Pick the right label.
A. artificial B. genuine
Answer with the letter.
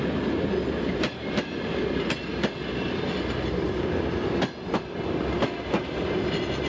B